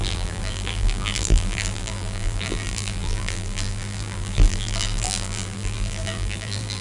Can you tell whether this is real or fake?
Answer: fake